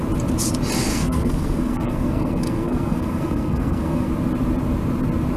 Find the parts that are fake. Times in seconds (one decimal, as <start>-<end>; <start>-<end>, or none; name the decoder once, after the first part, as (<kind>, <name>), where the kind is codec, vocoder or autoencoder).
0.9-4.1 (codec, SNAC)